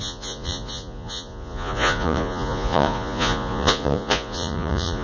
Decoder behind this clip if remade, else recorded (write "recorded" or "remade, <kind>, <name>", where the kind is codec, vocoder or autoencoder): remade, vocoder, Vocos